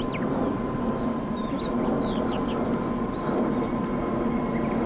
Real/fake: real